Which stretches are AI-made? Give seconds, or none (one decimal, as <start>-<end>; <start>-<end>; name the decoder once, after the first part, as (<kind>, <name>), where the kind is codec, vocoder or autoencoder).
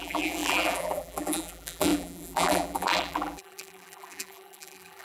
0.0-5.0 (vocoder, BigVGAN v2)